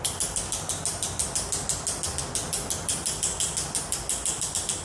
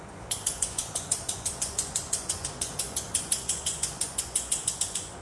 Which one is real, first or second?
first